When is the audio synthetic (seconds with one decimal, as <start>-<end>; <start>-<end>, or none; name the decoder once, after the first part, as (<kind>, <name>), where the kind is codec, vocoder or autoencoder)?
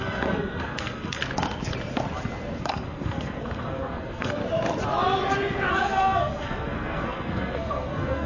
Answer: 0.0-1.2 (codec, SNAC); 2.6-4.4; 5.7-8.3